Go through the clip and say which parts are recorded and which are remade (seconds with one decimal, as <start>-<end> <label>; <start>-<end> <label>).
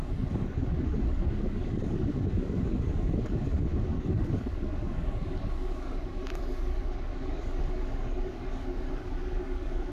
0.0-9.9 remade